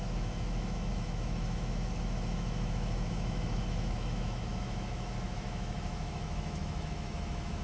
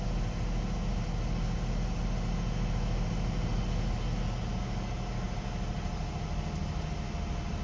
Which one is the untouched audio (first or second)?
second